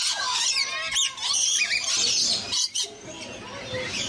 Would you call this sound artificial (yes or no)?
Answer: no